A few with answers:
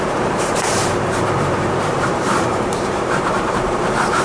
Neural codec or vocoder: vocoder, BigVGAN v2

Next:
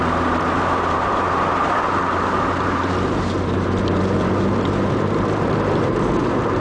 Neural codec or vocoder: vocoder, BigVGAN v2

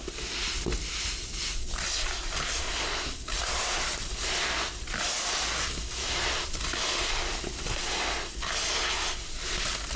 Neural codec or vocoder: none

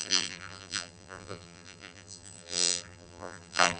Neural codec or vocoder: vocoder, BigVGAN v2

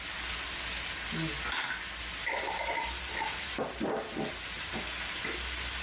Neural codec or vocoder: none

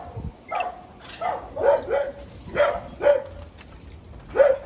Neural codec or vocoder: none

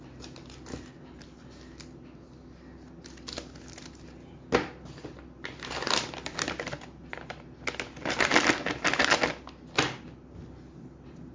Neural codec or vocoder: none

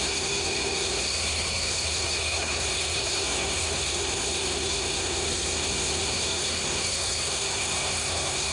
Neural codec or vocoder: codec, SNAC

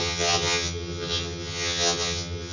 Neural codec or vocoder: vocoder, HiFi-GAN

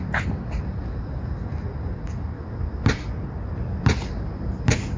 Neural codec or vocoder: none